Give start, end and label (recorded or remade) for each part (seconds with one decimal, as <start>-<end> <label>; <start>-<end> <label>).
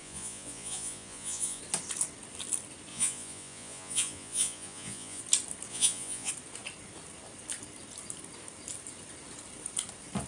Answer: 0.0-1.6 remade; 1.6-2.9 recorded; 2.9-5.2 remade; 5.2-5.7 recorded; 5.7-6.3 remade; 6.3-10.3 recorded